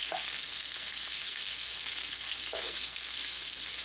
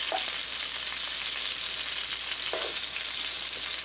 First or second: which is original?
second